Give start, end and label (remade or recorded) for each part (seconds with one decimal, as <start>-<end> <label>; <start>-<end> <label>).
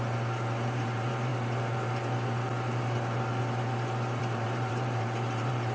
0.0-1.3 remade; 1.3-4.2 recorded; 4.2-5.7 remade